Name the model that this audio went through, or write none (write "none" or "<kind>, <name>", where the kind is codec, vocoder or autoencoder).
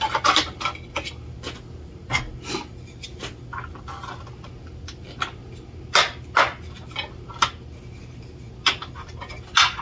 none